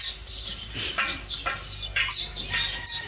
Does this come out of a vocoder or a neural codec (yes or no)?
no